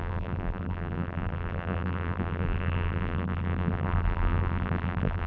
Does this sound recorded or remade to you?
remade